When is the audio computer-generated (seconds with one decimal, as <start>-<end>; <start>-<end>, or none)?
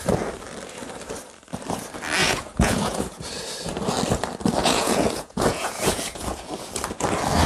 2.2-3.2; 4.6-6.5